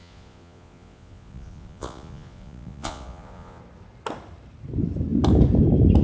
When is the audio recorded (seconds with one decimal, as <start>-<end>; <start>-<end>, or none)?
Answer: 3.6-6.0